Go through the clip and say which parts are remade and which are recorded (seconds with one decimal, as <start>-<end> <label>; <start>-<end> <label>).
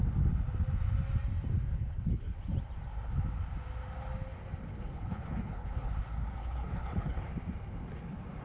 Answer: 0.0-1.7 recorded; 1.7-2.4 remade; 2.4-4.7 recorded; 4.7-5.9 remade; 5.9-6.4 recorded; 6.4-7.2 remade; 7.2-8.4 recorded